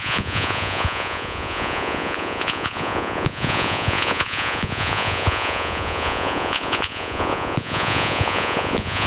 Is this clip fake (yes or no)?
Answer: yes